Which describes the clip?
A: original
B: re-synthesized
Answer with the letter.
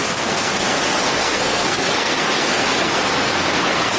B